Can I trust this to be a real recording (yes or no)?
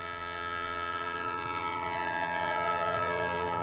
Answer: no